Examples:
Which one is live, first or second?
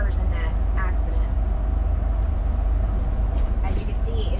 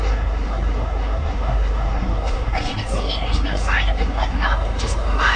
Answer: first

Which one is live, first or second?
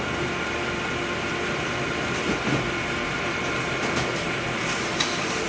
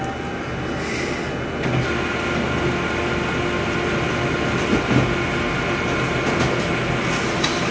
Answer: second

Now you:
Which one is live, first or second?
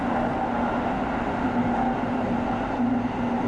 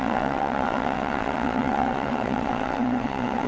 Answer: first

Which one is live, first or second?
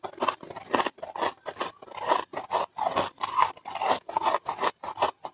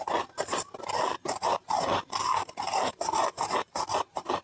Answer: first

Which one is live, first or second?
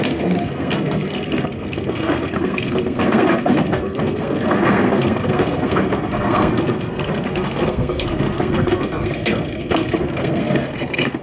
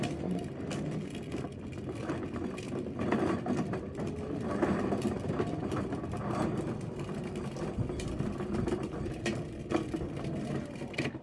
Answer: second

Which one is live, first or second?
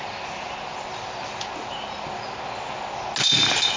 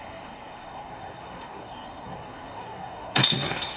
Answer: first